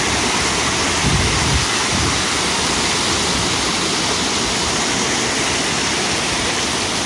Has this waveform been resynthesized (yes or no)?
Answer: no